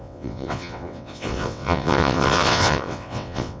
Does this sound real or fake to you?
fake